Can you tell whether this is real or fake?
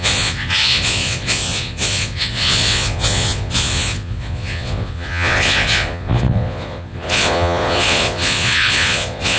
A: fake